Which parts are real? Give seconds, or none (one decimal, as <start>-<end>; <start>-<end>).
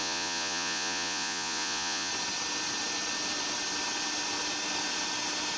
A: 2.1-5.6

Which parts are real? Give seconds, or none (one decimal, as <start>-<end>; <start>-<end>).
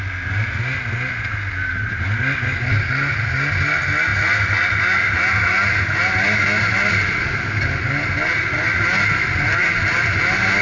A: 0.0-10.6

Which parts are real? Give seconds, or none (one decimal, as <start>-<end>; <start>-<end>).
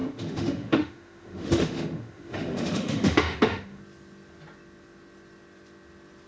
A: 3.8-6.3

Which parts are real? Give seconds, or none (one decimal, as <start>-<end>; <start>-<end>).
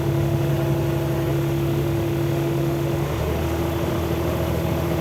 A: 0.5-1.3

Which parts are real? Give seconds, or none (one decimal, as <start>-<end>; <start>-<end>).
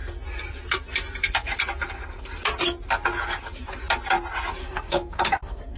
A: 0.0-4.6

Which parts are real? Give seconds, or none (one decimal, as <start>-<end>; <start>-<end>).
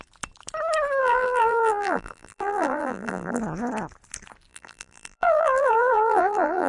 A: 0.0-1.0; 3.4-4.5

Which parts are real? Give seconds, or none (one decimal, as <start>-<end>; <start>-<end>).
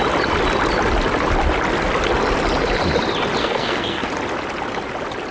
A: 0.0-3.4; 4.1-5.3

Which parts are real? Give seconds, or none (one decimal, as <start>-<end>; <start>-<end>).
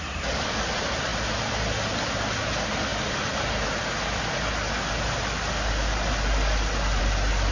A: 0.0-7.5